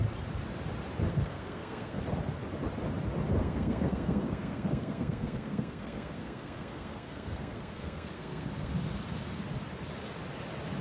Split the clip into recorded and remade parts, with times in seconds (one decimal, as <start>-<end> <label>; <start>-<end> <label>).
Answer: 0.0-1.1 recorded; 1.1-2.0 remade; 2.0-3.4 recorded; 3.4-8.7 remade; 8.7-10.8 recorded